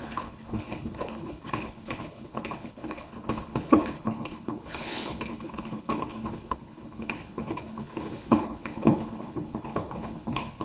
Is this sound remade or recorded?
remade